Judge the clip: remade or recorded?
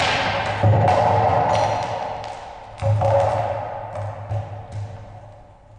recorded